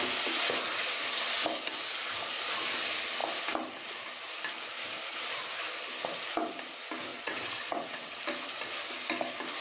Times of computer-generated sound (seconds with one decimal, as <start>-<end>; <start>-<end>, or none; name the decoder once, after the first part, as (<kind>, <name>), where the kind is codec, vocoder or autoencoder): 7.1-8.2 (vocoder, WaveNeXt)

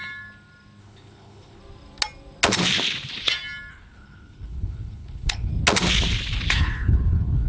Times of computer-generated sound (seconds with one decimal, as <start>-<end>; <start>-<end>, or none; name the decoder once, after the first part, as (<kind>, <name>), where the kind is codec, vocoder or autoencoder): 0.8-1.6 (codec, HILCodec); 3.7-5.5; 6.5-7.5

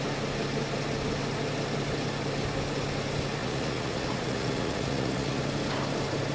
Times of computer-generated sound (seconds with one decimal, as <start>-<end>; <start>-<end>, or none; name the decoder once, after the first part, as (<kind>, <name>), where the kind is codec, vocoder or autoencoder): 3.4-5.4 (vocoder, Vocos)

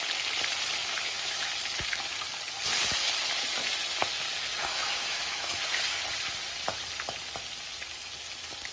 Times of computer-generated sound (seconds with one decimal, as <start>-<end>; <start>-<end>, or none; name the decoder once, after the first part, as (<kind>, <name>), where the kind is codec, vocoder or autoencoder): 0.8-1.5 (autoencoder, DAC-VAE); 4.6-5.6

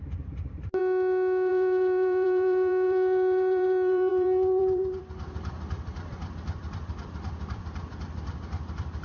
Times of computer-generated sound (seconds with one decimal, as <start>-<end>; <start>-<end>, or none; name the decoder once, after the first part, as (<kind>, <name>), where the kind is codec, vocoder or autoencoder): 0.0-0.8 (vocoder, BigVGAN v2); 1.5-9.0